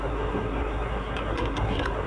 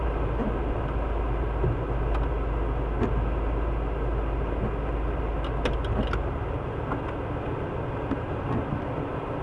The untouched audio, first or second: second